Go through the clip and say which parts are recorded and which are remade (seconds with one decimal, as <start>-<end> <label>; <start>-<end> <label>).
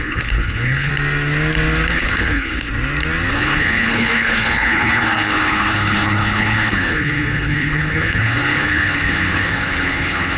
0.0-0.9 remade; 0.9-1.9 recorded; 1.9-2.7 remade; 2.7-3.3 recorded; 3.3-10.4 remade